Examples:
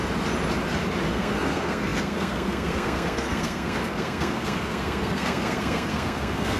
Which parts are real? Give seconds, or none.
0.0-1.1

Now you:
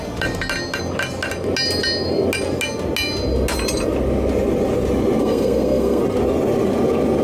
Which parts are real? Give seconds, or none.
0.0-5.2; 6.0-7.2

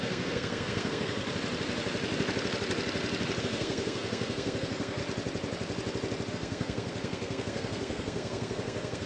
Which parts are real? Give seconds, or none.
1.2-3.4; 5.0-6.3

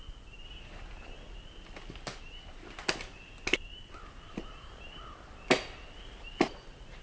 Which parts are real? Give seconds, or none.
0.0-7.0

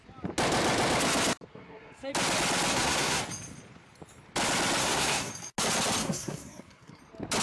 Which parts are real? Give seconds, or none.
0.0-1.5; 2.1-2.7; 3.2-4.8; 5.3-6.0; 7.0-7.4

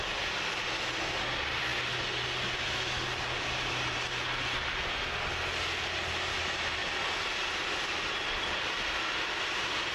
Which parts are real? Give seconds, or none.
0.0-9.9

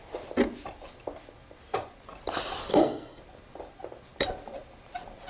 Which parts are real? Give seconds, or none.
0.0-2.7; 3.2-5.3

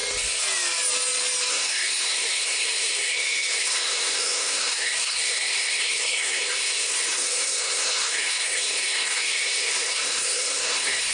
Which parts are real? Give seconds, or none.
0.0-1.5